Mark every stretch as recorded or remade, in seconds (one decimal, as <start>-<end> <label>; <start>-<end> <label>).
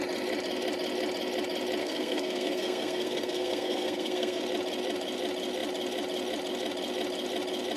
0.0-1.8 recorded; 1.8-4.4 remade; 4.4-7.8 recorded